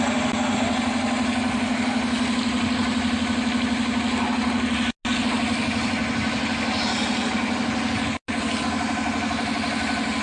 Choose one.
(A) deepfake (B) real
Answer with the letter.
B